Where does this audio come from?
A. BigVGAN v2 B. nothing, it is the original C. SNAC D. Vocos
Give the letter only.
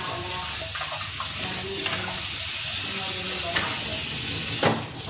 B